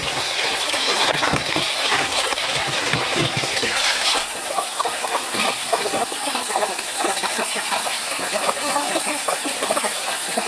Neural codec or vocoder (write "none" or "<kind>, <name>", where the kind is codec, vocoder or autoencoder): codec, SNAC